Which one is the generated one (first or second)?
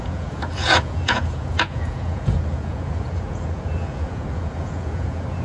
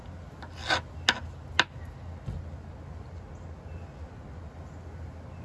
first